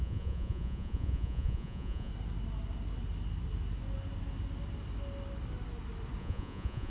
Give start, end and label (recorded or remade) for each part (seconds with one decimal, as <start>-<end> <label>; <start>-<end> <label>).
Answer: 0.0-2.1 remade; 2.1-6.2 recorded; 6.2-6.9 remade